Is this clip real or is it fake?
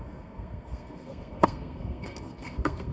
fake